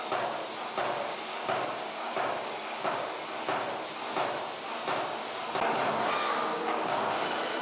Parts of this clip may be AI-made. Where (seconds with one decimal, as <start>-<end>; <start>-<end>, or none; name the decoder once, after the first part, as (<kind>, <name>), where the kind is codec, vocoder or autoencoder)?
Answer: 1.1-3.0 (codec, DAC); 6.5-7.1